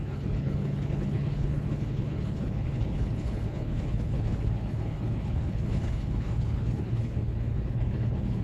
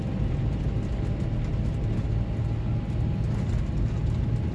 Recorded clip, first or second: second